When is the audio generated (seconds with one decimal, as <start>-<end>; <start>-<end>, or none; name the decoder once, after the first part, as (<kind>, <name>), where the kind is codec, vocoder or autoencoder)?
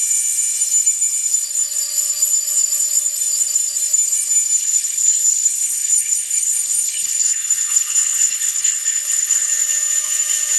4.6-9.5 (codec, HILCodec)